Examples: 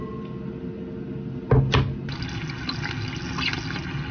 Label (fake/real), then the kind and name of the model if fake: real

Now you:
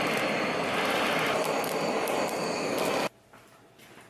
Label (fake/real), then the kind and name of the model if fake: real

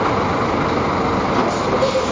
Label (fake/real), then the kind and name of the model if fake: real